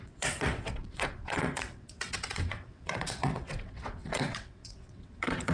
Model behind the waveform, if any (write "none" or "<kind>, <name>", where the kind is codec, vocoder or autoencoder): vocoder, WaveNeXt